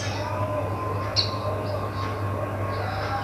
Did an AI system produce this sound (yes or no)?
no